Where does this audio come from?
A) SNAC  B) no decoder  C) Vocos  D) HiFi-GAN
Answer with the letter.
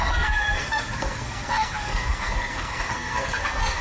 A